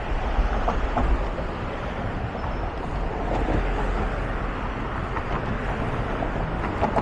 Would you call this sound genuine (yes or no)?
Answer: yes